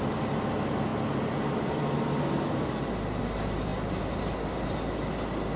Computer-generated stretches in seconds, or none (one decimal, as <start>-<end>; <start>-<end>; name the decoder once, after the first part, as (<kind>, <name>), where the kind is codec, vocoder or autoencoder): none